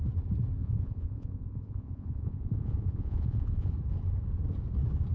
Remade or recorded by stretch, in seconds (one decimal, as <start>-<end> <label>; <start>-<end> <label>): 0.0-0.6 recorded; 0.6-3.7 remade; 3.7-5.1 recorded